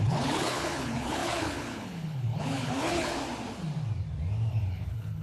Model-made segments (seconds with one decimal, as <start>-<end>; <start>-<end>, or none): 0.0-3.2; 4.5-5.2